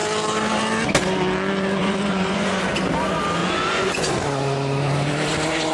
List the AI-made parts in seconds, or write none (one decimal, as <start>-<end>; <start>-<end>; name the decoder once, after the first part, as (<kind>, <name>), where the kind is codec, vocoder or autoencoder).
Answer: 1.8-2.7 (vocoder, Vocos); 3.4-4.1